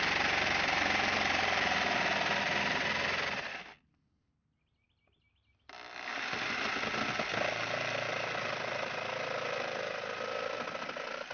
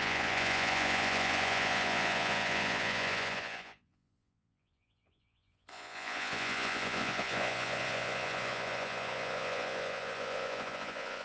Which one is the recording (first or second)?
first